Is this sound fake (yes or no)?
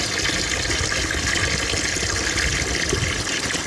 no